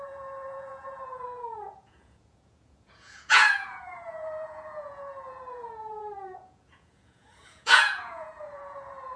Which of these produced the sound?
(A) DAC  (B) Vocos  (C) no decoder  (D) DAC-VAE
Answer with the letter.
B